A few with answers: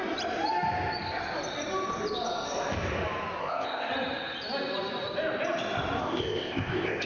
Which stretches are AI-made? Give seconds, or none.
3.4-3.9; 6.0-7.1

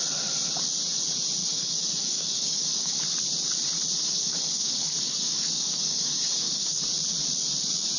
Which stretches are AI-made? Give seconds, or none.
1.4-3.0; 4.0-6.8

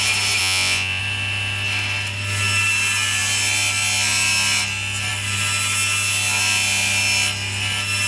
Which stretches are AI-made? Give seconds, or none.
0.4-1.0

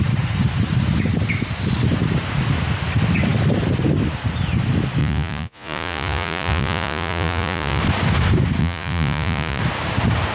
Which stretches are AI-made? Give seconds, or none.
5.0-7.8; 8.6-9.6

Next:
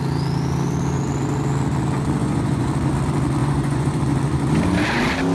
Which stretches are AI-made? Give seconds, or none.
2.2-2.7; 3.4-4.0

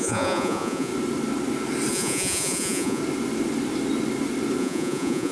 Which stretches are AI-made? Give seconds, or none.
0.0-0.9; 1.9-3.0; 4.6-5.3

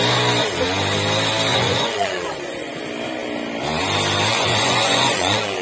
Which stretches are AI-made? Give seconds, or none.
1.5-2.8; 4.3-5.6

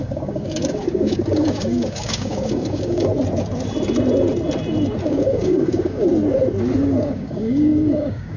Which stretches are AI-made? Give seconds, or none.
0.0-3.1; 5.0-6.1; 6.8-8.4